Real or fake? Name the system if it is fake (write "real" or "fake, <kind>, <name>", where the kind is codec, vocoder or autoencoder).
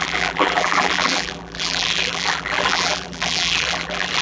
fake, vocoder, BigVGAN v2